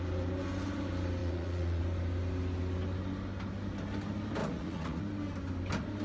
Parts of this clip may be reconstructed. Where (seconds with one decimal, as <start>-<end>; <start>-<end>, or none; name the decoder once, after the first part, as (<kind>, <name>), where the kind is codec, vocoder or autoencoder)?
1.2-1.8 (vocoder, Vocos); 4.4-5.0